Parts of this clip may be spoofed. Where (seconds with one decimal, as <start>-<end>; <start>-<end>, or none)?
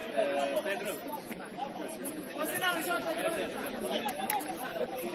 0.0-0.6; 1.0-4.1